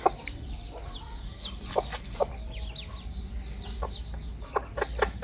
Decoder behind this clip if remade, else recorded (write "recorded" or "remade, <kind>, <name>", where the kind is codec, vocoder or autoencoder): recorded